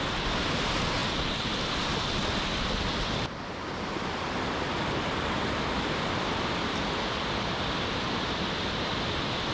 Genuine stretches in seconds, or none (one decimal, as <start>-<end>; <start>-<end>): 0.0-9.5